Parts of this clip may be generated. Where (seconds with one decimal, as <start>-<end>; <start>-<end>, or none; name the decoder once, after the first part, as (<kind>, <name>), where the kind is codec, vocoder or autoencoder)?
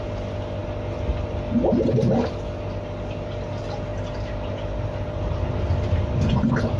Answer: none